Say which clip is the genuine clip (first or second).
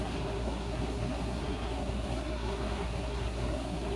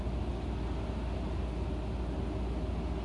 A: second